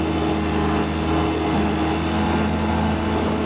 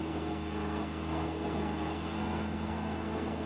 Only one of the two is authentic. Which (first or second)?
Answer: first